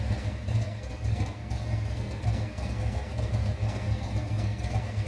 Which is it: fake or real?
fake